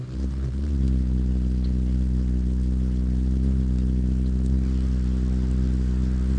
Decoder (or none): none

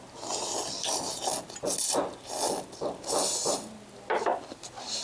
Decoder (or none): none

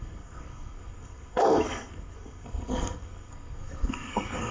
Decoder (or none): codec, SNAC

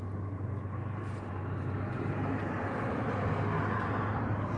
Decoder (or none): none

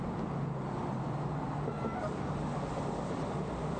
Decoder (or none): none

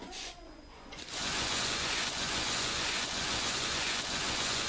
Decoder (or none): vocoder, Vocos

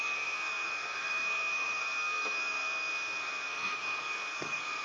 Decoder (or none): codec, SNAC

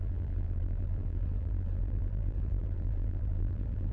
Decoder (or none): vocoder, BigVGAN v2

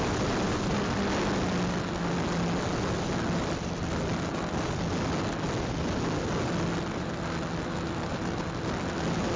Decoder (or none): none